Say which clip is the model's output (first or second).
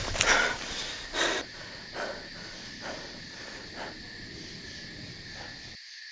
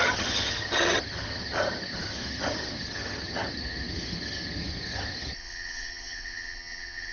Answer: second